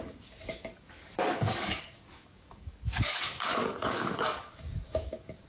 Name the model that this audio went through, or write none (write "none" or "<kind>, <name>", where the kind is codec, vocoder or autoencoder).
codec, DAC